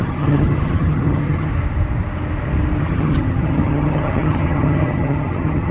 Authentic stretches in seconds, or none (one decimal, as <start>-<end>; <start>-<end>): 1.5-2.8